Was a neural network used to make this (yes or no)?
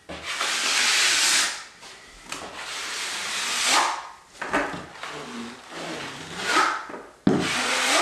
no